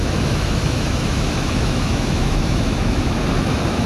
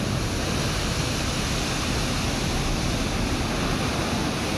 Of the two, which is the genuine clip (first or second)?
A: second